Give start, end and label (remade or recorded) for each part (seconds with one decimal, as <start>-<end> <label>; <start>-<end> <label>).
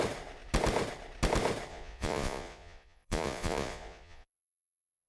0.0-1.7 recorded; 1.7-5.1 remade